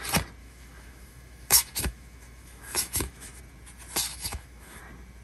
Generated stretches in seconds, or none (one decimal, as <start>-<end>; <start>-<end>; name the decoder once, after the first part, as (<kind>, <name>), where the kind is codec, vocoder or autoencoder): 0.4-3.4 (autoencoder, DAC-VAE); 4.1-4.8